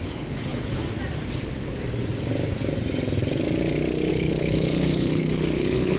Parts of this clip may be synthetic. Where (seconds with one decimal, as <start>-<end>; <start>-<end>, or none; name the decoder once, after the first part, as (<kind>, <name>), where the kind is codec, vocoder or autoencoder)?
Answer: 0.0-0.8 (codec, HILCodec); 4.1-6.0